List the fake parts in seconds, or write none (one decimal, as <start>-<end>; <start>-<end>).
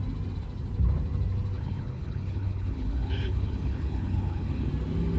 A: 1.6-4.7